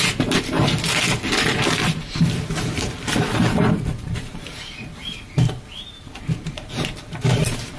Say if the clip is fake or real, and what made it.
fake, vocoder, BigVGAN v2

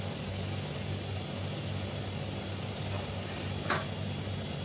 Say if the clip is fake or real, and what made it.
real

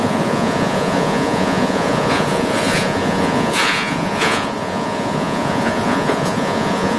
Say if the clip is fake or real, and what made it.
fake, vocoder, Vocos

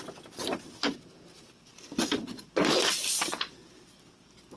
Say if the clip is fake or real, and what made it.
real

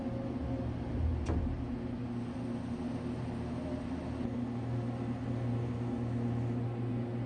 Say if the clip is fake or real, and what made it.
real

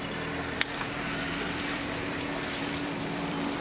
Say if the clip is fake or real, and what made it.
fake, vocoder, BigVGAN v2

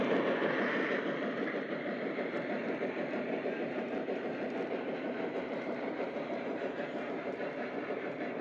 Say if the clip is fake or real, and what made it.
fake, vocoder, BigVGAN v2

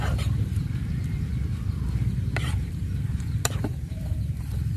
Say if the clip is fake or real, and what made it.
fake, vocoder, BigVGAN v2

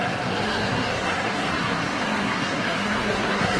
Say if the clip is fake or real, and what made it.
fake, codec, SNAC